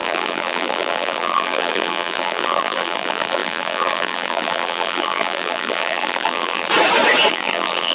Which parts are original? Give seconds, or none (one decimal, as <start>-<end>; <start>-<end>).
6.7-7.3